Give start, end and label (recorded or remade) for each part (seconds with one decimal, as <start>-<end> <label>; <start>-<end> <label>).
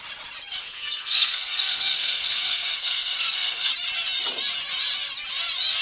0.0-0.6 recorded; 0.6-3.7 remade; 3.7-5.8 recorded